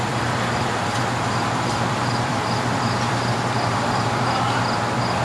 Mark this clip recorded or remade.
remade